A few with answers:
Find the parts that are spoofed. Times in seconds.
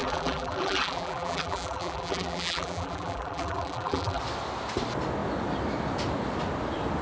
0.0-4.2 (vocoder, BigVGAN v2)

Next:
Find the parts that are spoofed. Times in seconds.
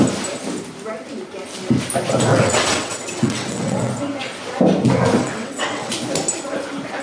2.3-3.9 (vocoder, WaveNeXt); 5.2-5.9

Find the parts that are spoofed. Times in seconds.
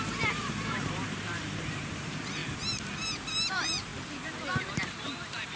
0.0-2.4 (vocoder, BigVGAN v2); 3.5-5.6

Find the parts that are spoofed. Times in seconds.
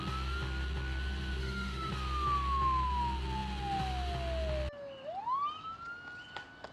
1.4-1.9 (autoencoder, DAC-VAE)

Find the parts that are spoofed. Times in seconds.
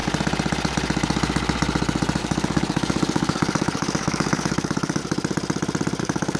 2.2-5.0 (codec, DAC); 6.0-6.4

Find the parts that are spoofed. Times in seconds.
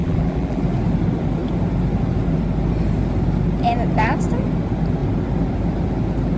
0.0-0.6 (vocoder, BigVGAN v2)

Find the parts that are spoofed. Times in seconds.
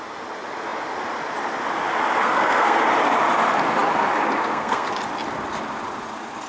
2.2-2.8 (codec, SNAC); 4.4-4.9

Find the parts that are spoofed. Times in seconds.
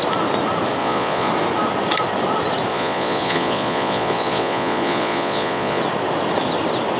0.8-1.3 (vocoder, Vocos); 2.7-5.8